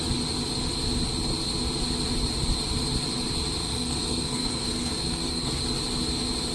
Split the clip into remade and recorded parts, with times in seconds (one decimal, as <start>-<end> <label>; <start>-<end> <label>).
0.0-3.6 recorded; 3.6-5.5 remade; 5.5-6.5 recorded